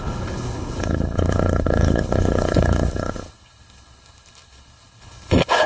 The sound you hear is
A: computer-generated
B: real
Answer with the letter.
A